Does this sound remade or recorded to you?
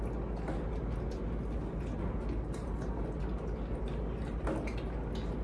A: recorded